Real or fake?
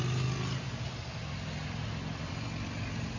real